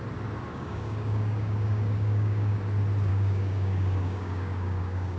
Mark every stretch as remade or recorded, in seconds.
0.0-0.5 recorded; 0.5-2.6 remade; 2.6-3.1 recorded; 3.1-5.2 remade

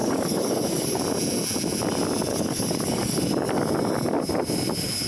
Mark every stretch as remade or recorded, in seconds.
0.0-1.0 remade; 1.0-2.3 recorded; 2.3-3.2 remade; 3.2-5.1 recorded

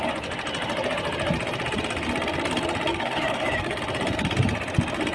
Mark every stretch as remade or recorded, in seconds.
0.0-2.9 recorded; 2.9-3.8 remade; 3.8-5.1 recorded

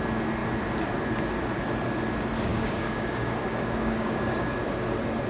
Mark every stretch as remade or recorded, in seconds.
0.0-2.5 recorded; 2.5-4.8 remade; 4.8-5.3 recorded

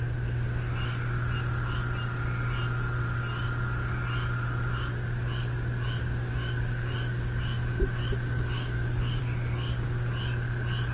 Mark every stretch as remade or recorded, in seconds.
0.0-6.0 recorded; 6.0-9.2 remade; 9.2-10.9 recorded